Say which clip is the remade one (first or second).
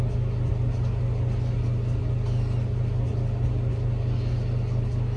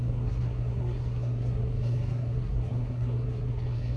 second